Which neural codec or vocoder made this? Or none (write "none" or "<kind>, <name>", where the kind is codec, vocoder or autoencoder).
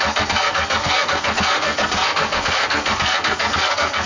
codec, SNAC